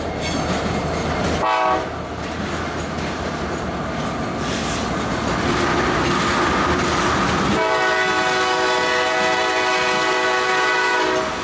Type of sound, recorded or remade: recorded